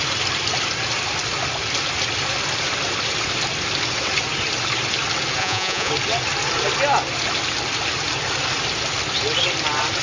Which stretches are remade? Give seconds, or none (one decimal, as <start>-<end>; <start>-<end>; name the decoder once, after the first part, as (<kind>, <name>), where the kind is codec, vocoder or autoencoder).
5.4-5.9 (vocoder, Vocos)

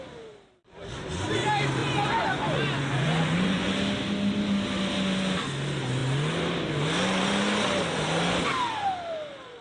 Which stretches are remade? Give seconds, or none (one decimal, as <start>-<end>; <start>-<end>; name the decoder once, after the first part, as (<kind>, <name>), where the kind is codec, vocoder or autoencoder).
1.8-3.7 (vocoder, Vocos)